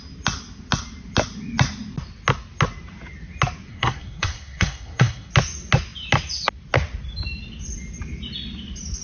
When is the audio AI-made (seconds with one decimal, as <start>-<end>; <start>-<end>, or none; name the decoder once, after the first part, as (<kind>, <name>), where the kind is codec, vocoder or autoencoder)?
3.7-5.3 (codec, SNAC)